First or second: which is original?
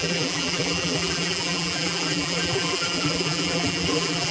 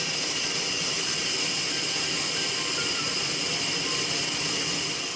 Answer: second